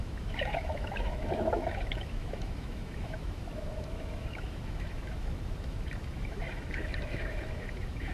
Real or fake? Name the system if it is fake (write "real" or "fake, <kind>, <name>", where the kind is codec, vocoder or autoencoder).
fake, autoencoder, DAC-VAE